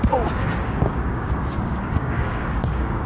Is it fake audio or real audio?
fake